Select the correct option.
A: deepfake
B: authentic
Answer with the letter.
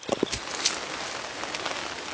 B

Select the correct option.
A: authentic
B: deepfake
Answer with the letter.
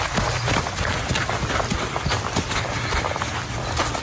A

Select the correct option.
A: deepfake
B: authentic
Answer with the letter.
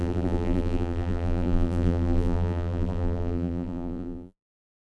A